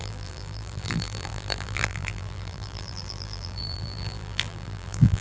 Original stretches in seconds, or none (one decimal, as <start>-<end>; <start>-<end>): none